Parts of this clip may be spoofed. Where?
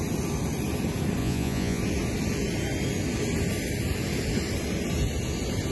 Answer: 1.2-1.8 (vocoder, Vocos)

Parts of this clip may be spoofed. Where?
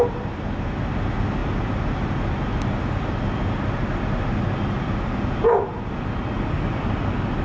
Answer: none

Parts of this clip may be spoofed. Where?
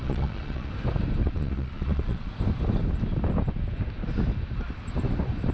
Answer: 0.0-0.7 (vocoder, Vocos); 1.2-2.3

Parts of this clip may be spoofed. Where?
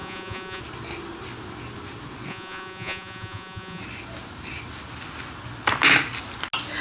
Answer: 0.0-0.6 (vocoder, Vocos); 2.3-3.8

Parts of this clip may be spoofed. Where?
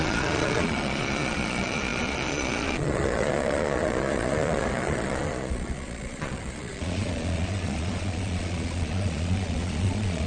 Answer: 0.0-10.3 (vocoder, Vocos)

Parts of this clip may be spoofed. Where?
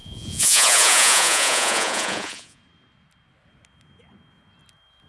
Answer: 0.0-2.6 (vocoder, Vocos)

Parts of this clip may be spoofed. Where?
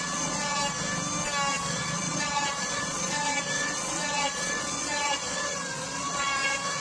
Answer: 0.0-0.6 (vocoder, Vocos); 1.5-6.8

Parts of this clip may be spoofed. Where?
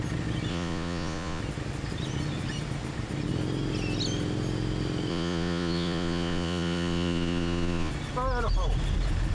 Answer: 0.5-1.4 (vocoder, Vocos); 5.1-7.9